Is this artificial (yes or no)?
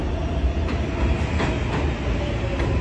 no